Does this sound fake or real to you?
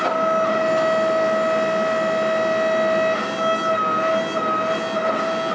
real